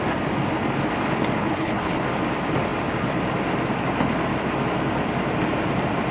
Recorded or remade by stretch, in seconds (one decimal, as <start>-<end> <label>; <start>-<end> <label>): 0.0-1.4 recorded; 1.4-2.0 remade; 2.0-6.1 recorded